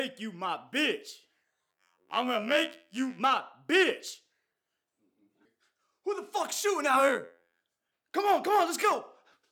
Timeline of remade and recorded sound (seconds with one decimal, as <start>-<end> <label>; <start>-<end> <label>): 0.0-1.7 recorded; 1.7-3.2 remade; 3.2-7.0 recorded; 7.0-7.6 remade; 7.6-9.5 recorded